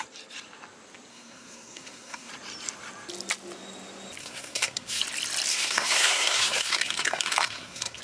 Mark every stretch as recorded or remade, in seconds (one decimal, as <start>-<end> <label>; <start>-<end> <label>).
0.0-1.1 recorded; 1.1-2.3 remade; 2.3-4.2 recorded; 4.2-5.0 remade; 5.0-5.5 recorded; 5.5-8.0 remade